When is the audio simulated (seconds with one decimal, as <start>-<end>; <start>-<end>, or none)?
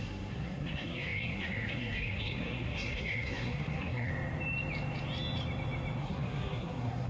0.0-4.1; 6.0-7.1